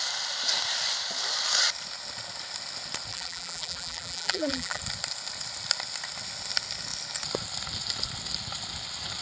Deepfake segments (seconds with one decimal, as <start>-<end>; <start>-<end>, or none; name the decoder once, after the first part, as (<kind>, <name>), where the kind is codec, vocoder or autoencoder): 3.1-4.8 (vocoder, BigVGAN v2)